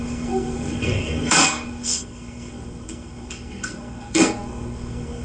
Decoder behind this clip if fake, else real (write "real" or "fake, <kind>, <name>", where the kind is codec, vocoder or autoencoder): fake, codec, SNAC